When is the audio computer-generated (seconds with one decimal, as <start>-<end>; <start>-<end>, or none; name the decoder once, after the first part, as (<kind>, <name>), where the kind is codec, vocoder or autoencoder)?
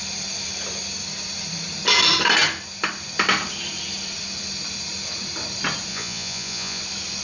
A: 5.9-6.8 (vocoder, Vocos)